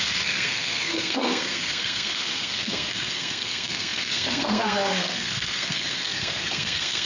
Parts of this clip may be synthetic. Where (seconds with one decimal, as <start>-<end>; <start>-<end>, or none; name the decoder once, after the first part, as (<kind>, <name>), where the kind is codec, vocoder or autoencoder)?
0.0-7.1 (codec, SNAC)